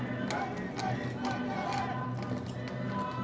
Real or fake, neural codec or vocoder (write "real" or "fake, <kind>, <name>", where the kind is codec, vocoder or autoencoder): real